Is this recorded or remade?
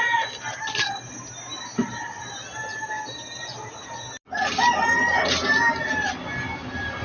recorded